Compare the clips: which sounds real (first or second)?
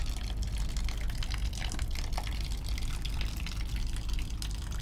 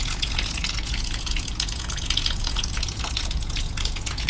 first